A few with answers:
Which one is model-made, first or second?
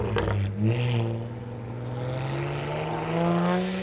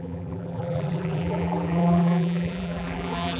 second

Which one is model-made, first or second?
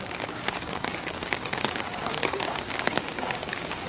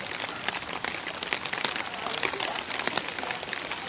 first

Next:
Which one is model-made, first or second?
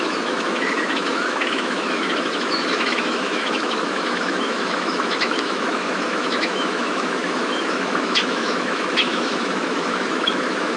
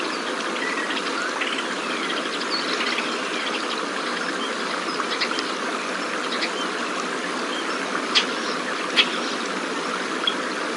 first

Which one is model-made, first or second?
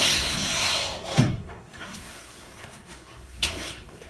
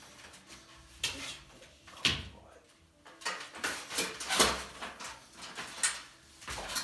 first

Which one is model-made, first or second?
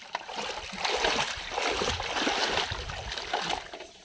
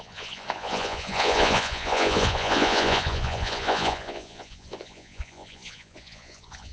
second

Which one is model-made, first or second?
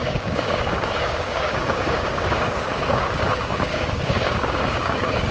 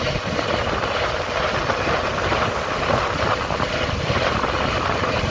first